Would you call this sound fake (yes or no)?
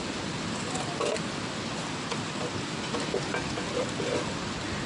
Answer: no